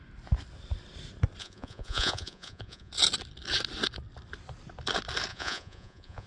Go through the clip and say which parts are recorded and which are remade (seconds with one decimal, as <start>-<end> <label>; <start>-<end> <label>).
0.0-1.4 recorded; 1.4-2.9 remade; 2.9-5.3 recorded; 5.3-6.3 remade